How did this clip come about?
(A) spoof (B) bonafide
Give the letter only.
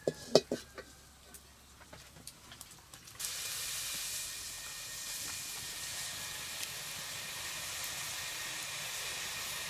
B